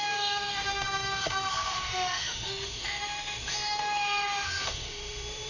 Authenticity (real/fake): fake